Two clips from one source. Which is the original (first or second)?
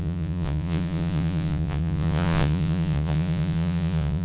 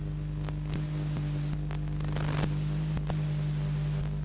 second